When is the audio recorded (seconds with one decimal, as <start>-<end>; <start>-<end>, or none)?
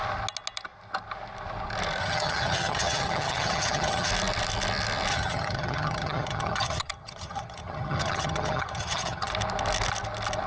0.0-2.0; 4.1-5.1; 9.3-10.5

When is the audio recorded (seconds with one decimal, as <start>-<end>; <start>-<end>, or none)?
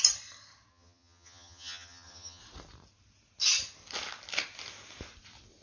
0.0-0.7; 2.4-5.6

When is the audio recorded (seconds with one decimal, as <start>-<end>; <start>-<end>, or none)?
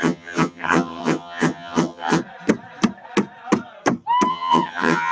2.2-4.3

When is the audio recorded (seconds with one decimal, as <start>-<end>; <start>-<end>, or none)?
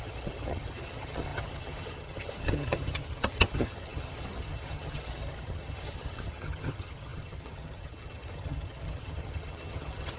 none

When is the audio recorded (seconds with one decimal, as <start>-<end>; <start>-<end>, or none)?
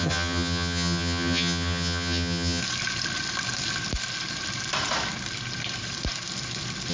2.6-6.9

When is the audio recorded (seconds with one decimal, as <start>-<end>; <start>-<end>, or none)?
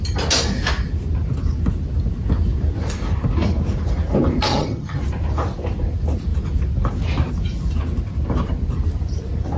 0.0-4.5; 5.0-9.6